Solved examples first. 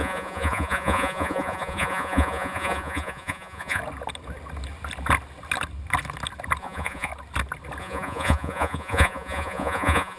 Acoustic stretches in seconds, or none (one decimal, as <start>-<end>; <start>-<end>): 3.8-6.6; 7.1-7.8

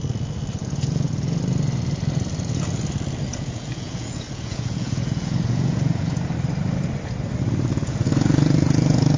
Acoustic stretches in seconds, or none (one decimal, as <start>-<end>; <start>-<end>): 0.0-0.6; 1.4-3.3; 6.2-7.7

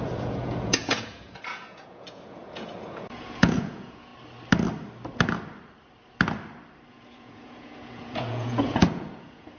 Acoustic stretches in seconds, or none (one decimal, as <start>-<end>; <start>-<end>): 4.1-6.9

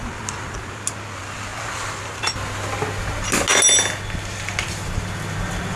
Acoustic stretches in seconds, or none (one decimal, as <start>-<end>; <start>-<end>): 0.0-5.8